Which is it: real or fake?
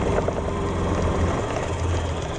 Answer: real